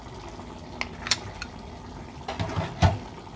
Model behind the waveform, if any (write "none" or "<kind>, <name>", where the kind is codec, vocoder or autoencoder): none